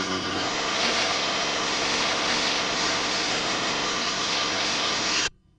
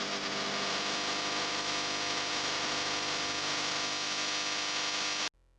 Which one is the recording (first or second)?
second